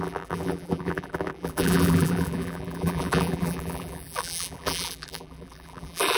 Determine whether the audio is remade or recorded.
remade